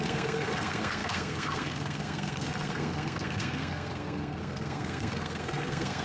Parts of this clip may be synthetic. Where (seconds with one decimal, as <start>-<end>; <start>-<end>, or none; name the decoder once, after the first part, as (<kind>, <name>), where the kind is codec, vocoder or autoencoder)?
0.0-6.0 (codec, SNAC)